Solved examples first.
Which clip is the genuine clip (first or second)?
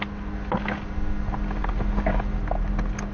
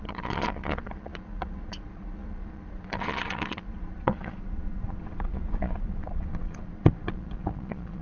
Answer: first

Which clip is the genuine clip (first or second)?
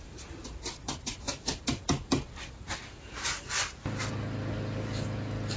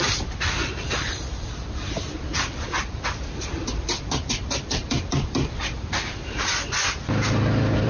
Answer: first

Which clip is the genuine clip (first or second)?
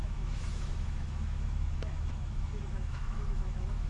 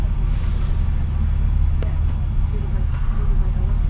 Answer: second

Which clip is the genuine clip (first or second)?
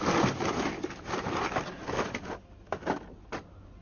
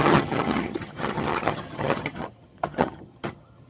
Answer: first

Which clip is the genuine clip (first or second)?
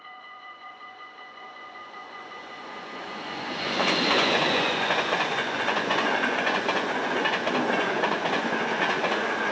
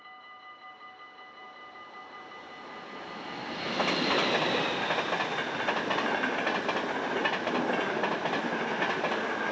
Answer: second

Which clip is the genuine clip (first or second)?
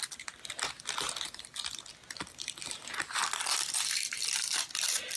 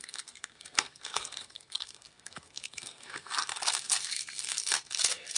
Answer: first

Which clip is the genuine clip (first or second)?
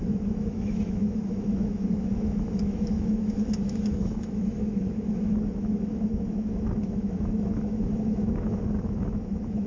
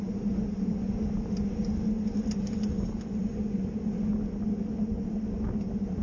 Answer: second